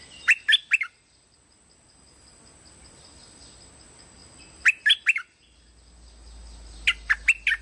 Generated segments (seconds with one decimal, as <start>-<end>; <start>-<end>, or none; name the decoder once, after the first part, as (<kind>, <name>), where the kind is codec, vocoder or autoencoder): none